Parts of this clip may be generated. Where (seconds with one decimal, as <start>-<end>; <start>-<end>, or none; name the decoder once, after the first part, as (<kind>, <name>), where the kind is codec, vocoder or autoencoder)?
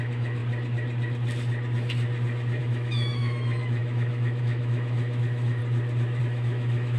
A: 0.0-0.4 (autoencoder, DAC-VAE); 2.6-5.6; 6.2-7.0